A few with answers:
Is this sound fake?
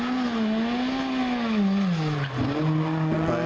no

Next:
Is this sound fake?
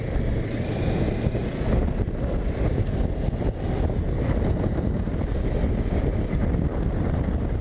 no